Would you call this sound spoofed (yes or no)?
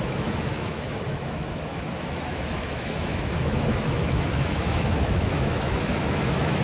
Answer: yes